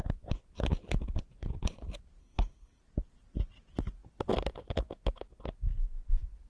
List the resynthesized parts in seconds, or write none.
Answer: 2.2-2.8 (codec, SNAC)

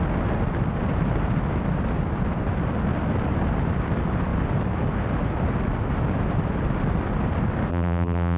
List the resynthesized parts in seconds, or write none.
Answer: 7.7-8.4 (vocoder, BigVGAN v2)

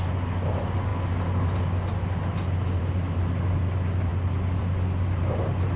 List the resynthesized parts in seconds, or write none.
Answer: none

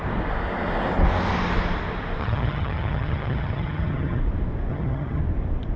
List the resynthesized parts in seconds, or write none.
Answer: 2.2-4.2 (vocoder, HiFi-GAN); 4.7-5.2